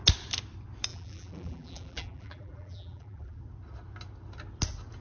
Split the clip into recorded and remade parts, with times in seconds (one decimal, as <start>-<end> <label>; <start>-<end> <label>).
0.0-0.9 recorded; 0.9-3.4 remade; 3.4-5.0 recorded